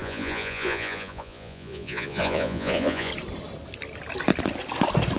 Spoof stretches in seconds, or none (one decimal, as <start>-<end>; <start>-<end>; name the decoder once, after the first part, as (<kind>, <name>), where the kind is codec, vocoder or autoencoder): 0.0-3.1 (vocoder, Vocos)